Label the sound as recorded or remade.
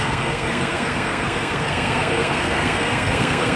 remade